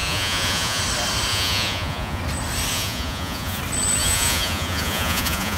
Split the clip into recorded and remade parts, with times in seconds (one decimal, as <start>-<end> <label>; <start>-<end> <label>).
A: 0.0-0.8 remade; 0.8-1.3 recorded; 1.3-2.2 remade; 2.2-2.7 recorded; 2.7-3.6 remade; 3.6-4.0 recorded; 4.0-5.6 remade